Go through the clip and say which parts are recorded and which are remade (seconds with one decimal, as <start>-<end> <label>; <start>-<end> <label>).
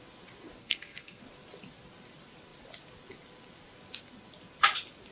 0.0-0.6 recorded; 0.6-1.2 remade; 1.2-5.1 recorded